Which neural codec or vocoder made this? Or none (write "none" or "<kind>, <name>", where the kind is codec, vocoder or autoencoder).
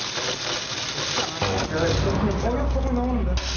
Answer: none